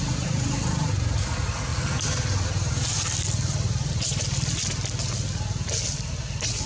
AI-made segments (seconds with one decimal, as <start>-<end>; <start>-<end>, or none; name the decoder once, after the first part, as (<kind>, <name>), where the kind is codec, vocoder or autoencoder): none